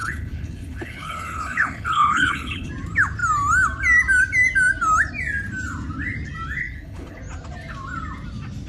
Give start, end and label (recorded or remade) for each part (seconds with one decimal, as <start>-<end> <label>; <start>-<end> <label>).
0.0-2.7 remade; 2.7-6.6 recorded; 6.6-7.2 remade; 7.2-8.7 recorded